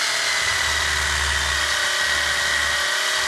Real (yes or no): yes